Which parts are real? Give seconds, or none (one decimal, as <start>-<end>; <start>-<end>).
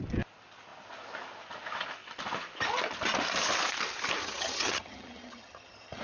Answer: 0.0-4.2